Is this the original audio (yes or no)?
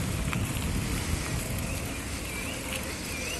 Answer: yes